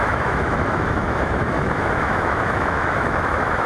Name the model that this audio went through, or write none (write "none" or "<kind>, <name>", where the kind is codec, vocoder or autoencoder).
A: autoencoder, DAC-VAE